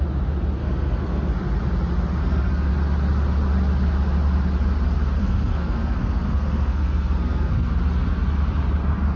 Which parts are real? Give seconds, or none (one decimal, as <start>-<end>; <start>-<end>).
0.0-0.6; 1.3-2.2; 2.7-5.2; 7.7-9.2